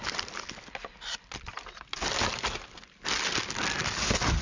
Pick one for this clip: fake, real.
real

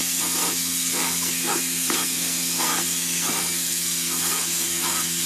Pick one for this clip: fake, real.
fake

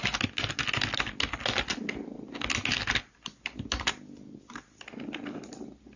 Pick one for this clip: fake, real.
real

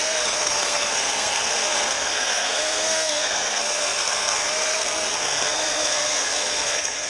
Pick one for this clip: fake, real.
fake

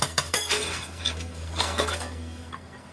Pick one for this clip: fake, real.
fake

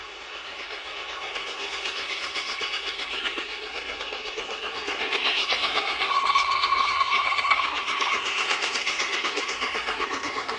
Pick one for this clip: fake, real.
fake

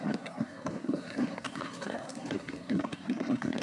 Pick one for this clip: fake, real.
fake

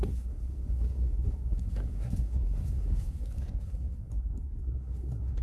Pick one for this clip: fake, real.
fake